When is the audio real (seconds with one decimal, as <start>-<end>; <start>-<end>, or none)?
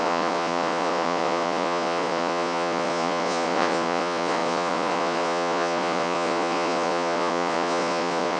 none